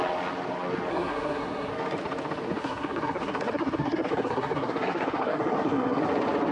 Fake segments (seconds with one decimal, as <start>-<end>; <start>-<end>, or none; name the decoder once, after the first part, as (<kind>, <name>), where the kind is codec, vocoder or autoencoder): 0.9-1.7 (codec, SNAC); 2.6-6.0